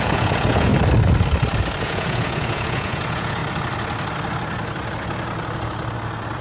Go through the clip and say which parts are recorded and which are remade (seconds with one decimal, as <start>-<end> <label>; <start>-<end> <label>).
0.0-0.7 remade; 0.7-1.8 recorded; 1.8-3.4 remade; 3.4-6.4 recorded